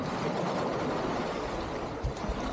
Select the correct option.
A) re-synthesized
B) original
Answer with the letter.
B